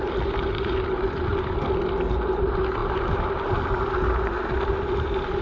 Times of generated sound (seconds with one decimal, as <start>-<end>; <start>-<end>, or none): 0.0-1.3; 2.3-5.4